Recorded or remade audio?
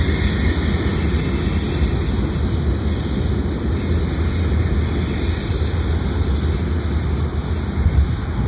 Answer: recorded